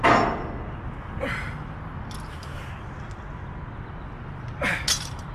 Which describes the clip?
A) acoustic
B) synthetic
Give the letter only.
A